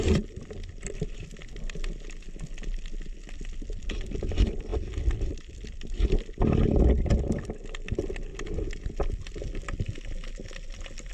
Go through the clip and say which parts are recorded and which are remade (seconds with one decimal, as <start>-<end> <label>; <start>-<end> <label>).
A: 0.0-11.1 recorded